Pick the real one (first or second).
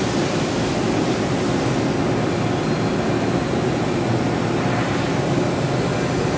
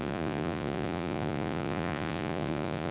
first